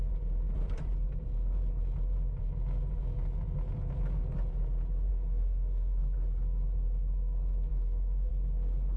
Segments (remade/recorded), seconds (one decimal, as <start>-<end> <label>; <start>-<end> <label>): 0.0-5.1 recorded; 5.1-6.0 remade; 6.0-7.7 recorded; 7.7-8.3 remade; 8.3-9.0 recorded